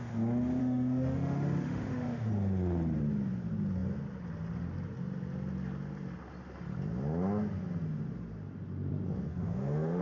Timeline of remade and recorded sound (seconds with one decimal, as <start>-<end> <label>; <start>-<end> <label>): 0.0-0.6 recorded; 0.6-2.3 remade; 2.3-9.3 recorded; 9.3-10.0 remade

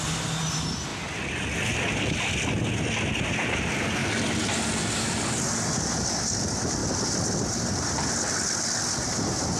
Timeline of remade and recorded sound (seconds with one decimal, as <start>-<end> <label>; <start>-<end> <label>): 0.0-9.6 recorded

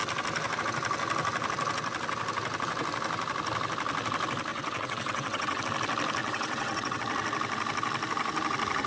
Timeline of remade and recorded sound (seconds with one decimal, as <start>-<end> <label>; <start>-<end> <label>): 0.0-4.5 recorded; 4.5-5.6 remade; 5.6-6.2 recorded; 6.2-7.0 remade; 7.0-8.9 recorded